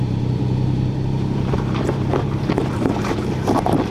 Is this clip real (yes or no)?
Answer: no